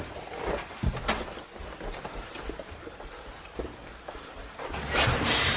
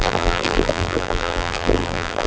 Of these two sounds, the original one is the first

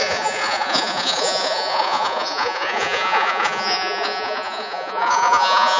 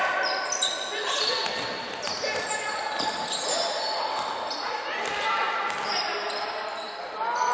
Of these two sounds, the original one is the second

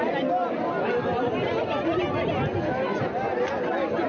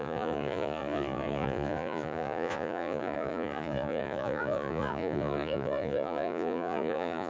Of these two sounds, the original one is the first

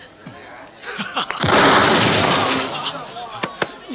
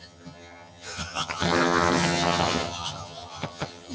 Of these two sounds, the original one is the first